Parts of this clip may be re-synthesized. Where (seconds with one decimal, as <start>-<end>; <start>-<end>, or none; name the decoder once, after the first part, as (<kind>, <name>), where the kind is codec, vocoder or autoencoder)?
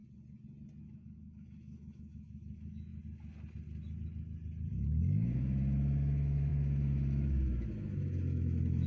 0.8-2.9 (autoencoder, DAC-VAE); 4.7-8.9